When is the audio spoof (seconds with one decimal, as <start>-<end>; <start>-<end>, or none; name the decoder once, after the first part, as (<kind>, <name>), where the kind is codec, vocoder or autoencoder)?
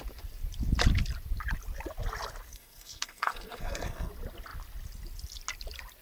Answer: 2.5-4.1 (codec, SNAC)